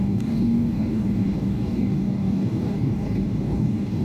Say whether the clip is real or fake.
fake